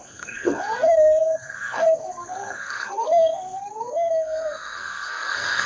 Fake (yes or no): yes